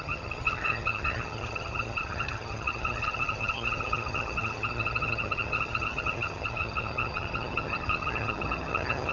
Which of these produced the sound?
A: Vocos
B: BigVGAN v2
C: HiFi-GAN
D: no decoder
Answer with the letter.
C